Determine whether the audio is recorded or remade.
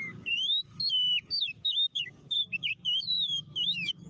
remade